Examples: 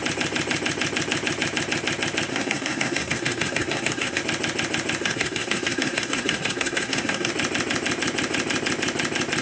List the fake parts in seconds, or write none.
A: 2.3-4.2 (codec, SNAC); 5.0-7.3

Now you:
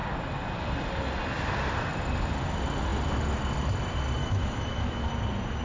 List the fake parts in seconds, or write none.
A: 4.2-5.1 (autoencoder, DAC-VAE)

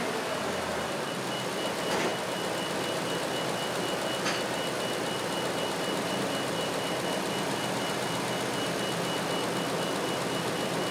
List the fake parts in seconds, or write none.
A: none

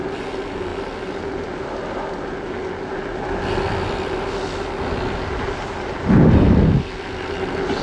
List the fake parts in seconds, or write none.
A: none